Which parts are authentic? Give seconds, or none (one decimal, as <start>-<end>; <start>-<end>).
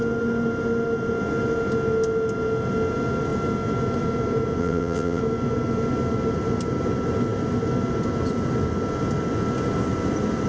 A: 0.0-4.6; 5.2-10.5